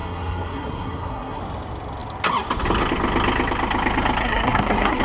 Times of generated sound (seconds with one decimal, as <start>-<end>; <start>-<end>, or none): 0.0-1.4; 4.2-5.0